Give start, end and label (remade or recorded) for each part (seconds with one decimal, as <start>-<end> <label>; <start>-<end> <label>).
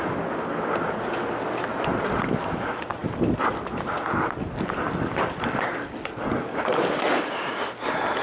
0.0-8.2 recorded